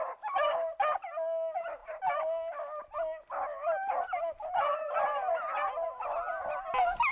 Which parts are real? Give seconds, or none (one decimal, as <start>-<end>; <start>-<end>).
0.0-7.1